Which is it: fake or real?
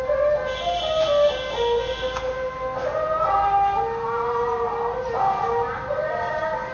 real